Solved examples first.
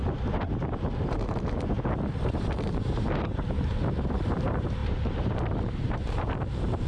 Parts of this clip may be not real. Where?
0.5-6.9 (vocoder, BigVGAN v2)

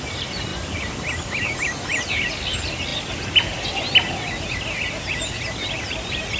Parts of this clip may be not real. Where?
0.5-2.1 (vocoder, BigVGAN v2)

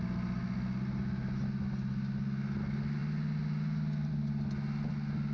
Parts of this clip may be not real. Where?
none

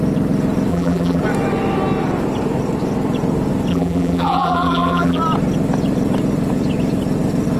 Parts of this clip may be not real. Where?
0.7-1.2 (vocoder, BigVGAN v2); 3.7-5.2

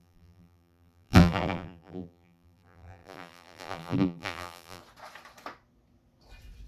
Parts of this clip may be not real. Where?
0.0-4.8 (vocoder, BigVGAN v2)